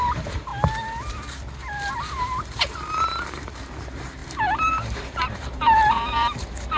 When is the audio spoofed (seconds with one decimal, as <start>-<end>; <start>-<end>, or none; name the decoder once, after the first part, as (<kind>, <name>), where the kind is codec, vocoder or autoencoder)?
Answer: 0.0-0.5 (vocoder, BigVGAN v2); 1.9-6.8